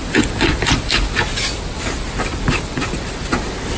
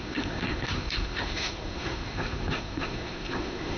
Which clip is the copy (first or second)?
second